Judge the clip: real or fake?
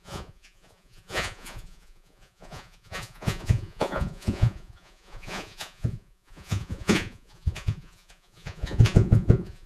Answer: fake